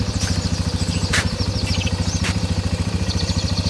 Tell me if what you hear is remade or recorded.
remade